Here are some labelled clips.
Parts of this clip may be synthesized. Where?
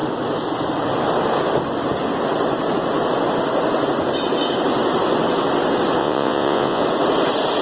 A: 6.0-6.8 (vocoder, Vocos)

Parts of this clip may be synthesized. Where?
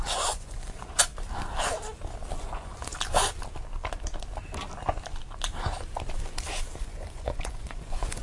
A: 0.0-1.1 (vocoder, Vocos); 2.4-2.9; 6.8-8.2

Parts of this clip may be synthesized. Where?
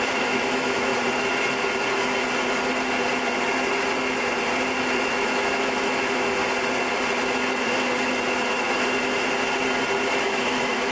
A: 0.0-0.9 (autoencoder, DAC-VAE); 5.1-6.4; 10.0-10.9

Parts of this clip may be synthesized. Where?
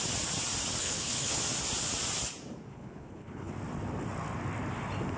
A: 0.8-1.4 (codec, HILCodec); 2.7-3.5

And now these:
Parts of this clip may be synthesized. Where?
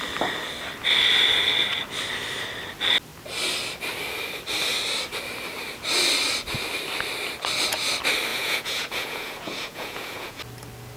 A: 8.3-10.4 (vocoder, Vocos)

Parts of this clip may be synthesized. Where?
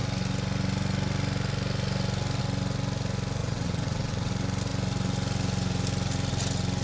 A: 3.4-4.3 (vocoder, WaveNeXt)